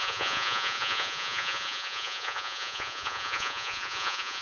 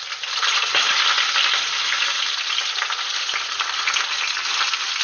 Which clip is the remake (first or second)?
first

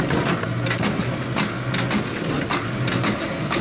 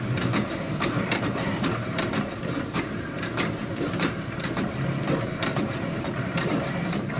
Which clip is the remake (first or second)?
second